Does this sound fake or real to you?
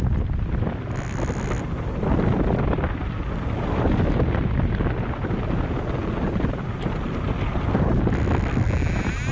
real